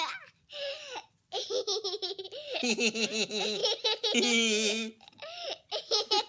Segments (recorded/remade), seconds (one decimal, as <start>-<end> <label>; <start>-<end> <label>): 0.0-6.3 recorded